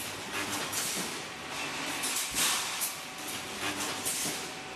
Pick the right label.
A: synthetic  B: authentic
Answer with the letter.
B